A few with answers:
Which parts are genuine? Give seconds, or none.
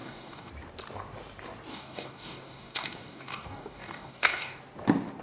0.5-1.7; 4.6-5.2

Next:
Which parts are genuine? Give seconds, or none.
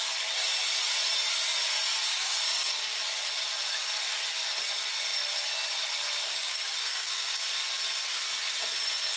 0.0-2.1; 3.0-6.3; 7.5-9.2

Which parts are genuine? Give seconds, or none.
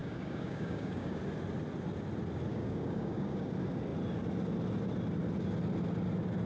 1.2-2.5; 3.5-6.5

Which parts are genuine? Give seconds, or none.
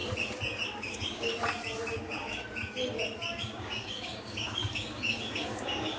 0.0-0.8; 1.3-1.9; 2.4-3.4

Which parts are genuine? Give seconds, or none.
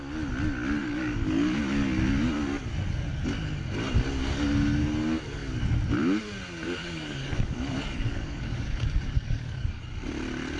0.0-0.8; 1.6-6.8; 9.8-10.6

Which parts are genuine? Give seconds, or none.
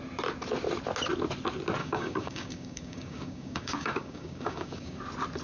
0.0-1.8; 5.0-5.4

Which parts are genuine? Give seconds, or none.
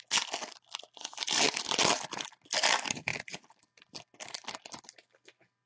0.0-5.7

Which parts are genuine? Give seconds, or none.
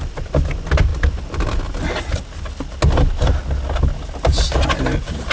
0.0-5.3